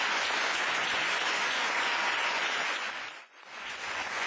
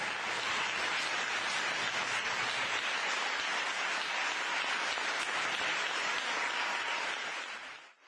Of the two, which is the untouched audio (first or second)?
second